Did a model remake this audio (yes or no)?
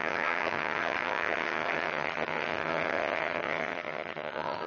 yes